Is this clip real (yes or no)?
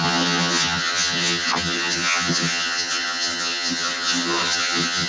no